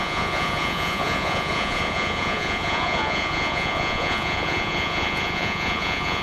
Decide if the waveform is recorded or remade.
remade